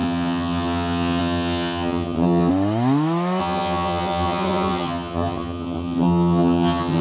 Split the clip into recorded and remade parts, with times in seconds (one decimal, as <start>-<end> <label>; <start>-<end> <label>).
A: 0.0-2.5 remade; 2.5-3.4 recorded; 3.4-7.0 remade